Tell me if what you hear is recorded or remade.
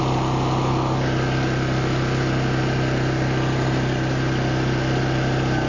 recorded